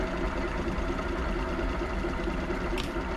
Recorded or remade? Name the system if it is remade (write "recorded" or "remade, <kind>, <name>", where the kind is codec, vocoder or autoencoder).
recorded